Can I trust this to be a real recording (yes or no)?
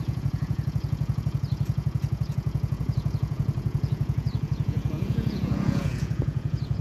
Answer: no